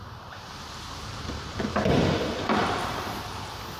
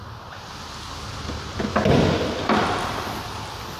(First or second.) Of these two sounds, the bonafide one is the second